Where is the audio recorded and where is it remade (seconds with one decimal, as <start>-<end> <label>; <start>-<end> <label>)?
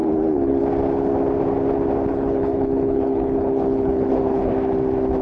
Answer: 0.0-0.6 remade; 0.6-2.1 recorded; 2.1-4.5 remade; 4.5-5.2 recorded